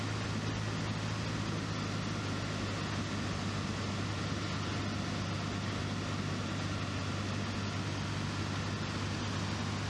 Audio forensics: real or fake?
real